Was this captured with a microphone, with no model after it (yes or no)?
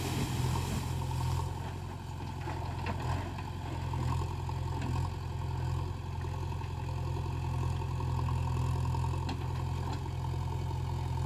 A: yes